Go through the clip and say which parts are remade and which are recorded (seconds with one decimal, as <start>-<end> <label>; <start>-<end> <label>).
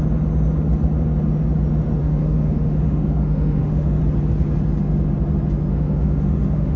0.0-2.0 recorded; 2.0-4.0 remade; 4.0-5.7 recorded; 5.7-6.8 remade